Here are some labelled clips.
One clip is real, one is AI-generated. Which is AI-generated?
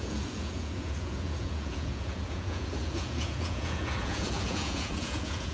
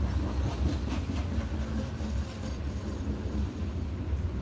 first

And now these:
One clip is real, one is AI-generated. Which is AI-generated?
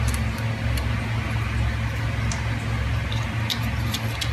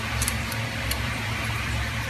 second